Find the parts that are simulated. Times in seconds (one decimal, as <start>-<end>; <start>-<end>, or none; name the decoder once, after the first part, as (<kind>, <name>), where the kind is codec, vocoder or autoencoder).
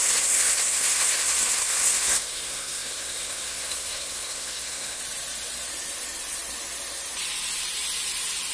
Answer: 0.0-5.0 (codec, SNAC)